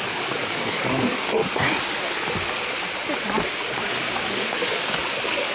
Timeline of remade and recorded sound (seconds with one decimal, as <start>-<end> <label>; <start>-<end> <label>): 0.0-1.4 remade; 1.4-3.9 recorded; 3.9-5.5 remade